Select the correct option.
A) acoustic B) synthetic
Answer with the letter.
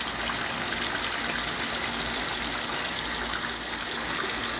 A